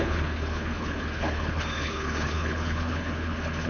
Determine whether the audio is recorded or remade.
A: remade